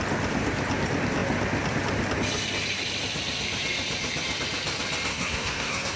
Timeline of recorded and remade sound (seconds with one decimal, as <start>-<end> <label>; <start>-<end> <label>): 0.0-5.1 recorded; 5.1-6.0 remade